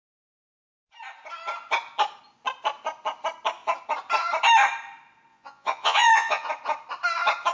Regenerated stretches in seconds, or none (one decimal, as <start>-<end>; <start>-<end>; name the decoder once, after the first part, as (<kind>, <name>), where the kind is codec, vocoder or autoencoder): 5.3-6.5 (vocoder, Vocos)